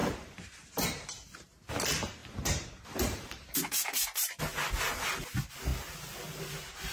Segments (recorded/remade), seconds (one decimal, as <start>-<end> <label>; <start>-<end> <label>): 0.0-1.7 remade; 1.7-2.2 recorded; 2.2-4.4 remade; 4.4-6.9 recorded